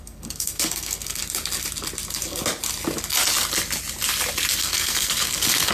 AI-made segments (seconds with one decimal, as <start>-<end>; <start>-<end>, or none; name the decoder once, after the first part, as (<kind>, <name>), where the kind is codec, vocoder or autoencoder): 0.0-1.2 (codec, SNAC); 4.6-5.7